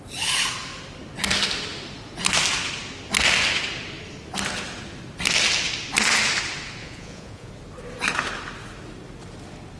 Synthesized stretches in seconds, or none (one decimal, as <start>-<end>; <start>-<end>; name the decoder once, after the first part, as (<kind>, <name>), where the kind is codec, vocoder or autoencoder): 6.8-7.5 (vocoder, Vocos)